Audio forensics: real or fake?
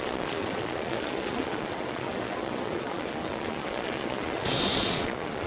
fake